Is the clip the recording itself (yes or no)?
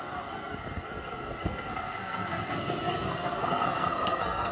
no